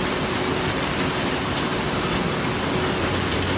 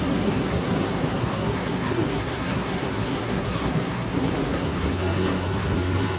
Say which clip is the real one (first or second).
first